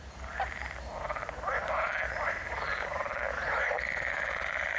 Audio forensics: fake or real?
fake